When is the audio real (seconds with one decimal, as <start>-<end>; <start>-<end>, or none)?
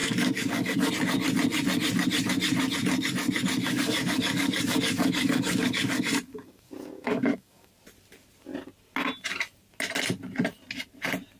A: 0.9-3.6; 7.7-11.4